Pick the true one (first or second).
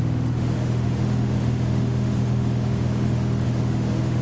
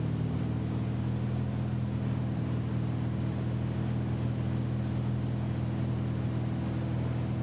second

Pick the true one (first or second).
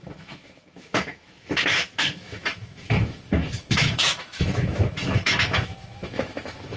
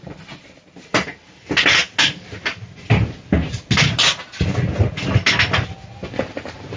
second